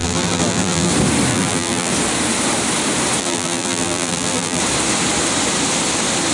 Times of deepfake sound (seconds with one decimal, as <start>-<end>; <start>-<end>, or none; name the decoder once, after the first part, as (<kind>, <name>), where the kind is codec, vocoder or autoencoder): 0.0-0.9 (vocoder, BigVGAN v2); 1.3-1.9; 3.2-4.6